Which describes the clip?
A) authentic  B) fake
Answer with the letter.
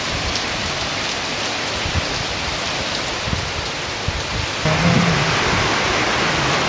A